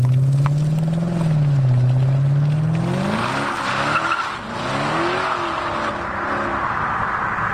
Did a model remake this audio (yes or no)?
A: no